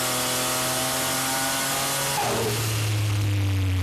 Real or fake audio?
real